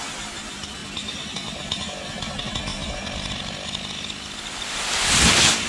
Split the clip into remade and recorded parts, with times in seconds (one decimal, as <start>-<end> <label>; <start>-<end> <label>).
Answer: 0.0-2.7 recorded; 2.7-3.8 remade; 3.8-5.7 recorded